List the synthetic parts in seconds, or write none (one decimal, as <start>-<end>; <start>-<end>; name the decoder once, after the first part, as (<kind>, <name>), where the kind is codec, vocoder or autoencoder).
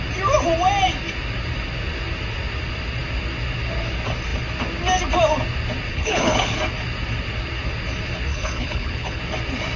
5.9-6.6 (codec, HILCodec); 8.3-9.2